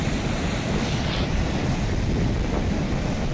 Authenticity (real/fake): real